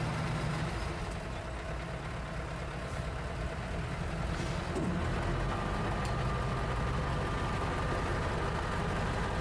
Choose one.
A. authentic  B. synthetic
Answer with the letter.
A